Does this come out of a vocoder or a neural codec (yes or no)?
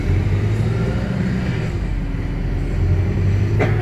no